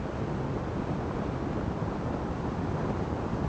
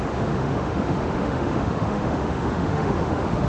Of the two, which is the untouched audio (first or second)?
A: first